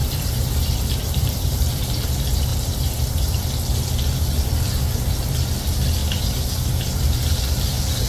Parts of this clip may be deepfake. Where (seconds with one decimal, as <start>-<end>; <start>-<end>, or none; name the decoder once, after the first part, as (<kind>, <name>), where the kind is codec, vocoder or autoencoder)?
0.0-1.8 (vocoder, BigVGAN v2); 2.5-3.3